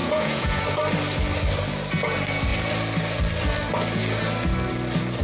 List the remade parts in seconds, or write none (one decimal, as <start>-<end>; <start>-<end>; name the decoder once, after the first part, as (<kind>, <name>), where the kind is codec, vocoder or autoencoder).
0.0-0.6 (vocoder, Vocos)